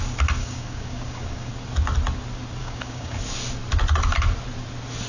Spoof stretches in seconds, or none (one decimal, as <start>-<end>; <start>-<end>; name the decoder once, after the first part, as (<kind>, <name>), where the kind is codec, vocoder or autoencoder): 0.4-1.5 (codec, DAC); 2.6-3.2